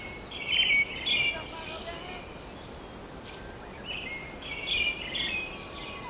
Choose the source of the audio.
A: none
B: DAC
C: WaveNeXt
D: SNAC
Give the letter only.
A